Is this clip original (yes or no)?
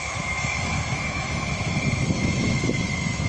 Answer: no